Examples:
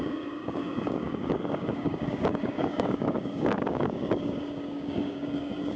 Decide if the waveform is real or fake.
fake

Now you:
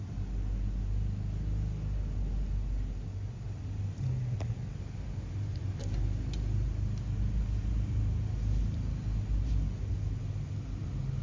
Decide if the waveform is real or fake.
real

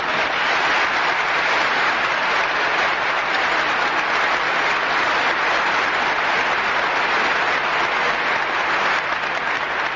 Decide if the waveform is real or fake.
real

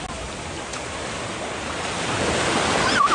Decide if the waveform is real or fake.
real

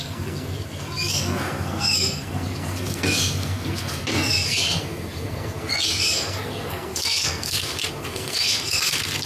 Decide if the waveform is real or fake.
fake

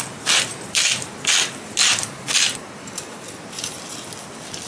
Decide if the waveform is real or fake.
real